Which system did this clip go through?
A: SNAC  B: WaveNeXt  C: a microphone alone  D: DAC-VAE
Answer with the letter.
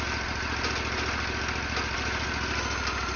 C